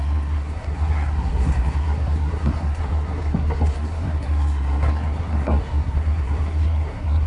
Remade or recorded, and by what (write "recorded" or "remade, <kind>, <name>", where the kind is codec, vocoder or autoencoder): remade, codec, SNAC